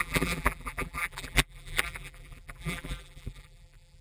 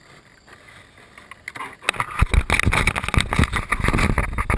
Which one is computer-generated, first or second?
first